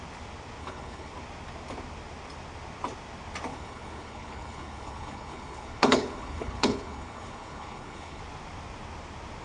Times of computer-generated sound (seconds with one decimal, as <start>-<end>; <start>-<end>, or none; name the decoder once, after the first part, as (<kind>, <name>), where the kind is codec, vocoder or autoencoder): 0.6-1.1 (codec, HILCodec); 3.5-8.2